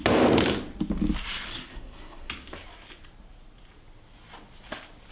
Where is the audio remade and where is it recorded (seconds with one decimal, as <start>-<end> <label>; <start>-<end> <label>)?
0.0-1.7 recorded; 1.7-2.3 remade; 2.3-5.1 recorded